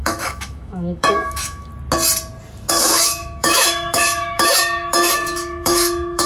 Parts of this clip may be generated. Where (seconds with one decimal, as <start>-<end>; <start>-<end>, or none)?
0.0-1.7; 2.7-6.3